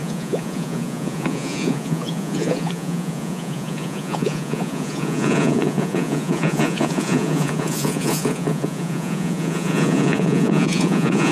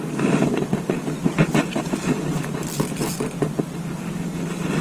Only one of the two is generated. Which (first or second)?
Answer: first